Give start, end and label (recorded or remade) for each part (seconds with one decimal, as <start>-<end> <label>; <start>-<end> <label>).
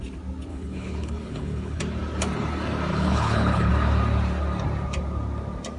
0.0-0.5 recorded; 0.5-1.8 remade; 1.8-2.9 recorded; 2.9-3.7 remade; 3.7-5.8 recorded